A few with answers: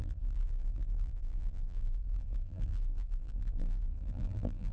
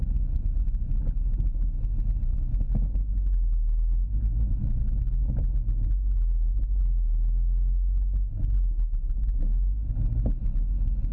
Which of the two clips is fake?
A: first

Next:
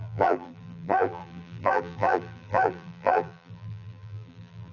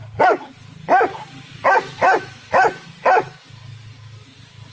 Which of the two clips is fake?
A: first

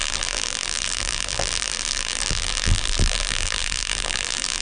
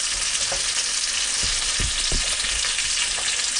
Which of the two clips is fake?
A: first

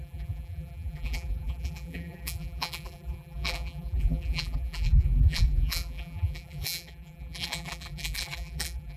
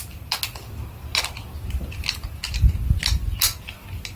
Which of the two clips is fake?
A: first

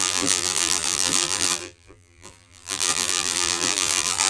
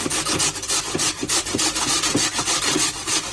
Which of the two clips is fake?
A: first